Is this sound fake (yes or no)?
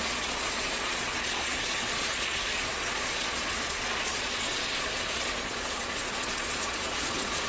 yes